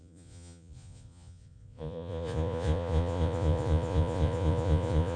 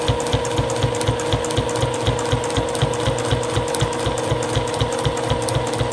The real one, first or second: second